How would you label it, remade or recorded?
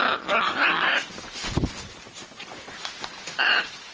recorded